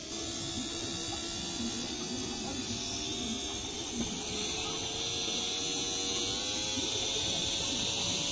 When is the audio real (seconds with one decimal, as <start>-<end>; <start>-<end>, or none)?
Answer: 0.0-8.3